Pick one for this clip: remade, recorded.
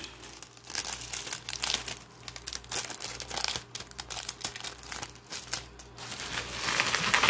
recorded